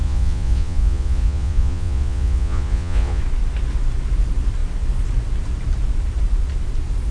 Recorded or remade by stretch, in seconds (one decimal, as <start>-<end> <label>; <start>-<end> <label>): 0.0-3.2 remade; 3.2-7.1 recorded